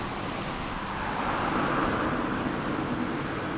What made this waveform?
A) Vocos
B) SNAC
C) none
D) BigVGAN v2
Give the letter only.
C